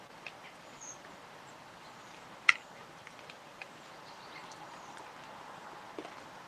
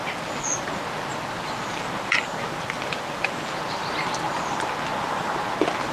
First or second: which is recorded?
second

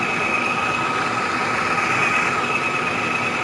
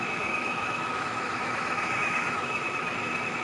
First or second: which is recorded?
first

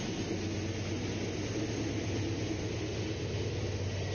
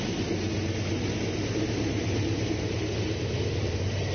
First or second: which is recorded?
first